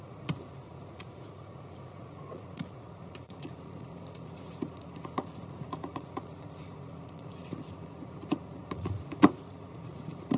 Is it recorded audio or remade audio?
remade